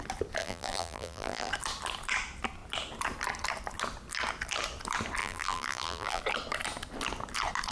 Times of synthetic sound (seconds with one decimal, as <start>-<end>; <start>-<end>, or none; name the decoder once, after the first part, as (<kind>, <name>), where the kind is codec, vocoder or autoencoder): 0.4-1.5 (vocoder, BigVGAN v2); 5.2-6.2